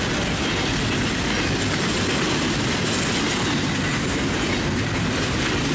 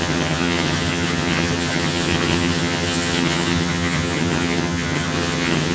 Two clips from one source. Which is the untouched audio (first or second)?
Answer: first